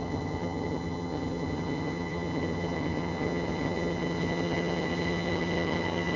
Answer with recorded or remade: remade